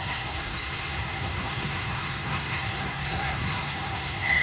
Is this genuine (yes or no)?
no